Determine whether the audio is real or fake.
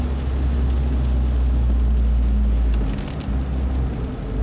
real